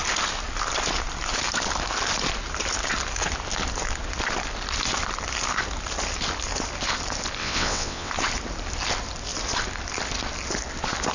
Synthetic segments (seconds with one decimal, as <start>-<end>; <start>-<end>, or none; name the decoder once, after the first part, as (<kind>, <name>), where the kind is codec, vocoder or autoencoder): 7.4-8.1 (vocoder, WaveNeXt)